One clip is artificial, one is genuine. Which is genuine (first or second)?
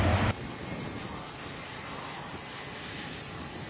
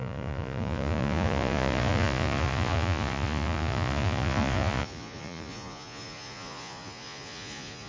first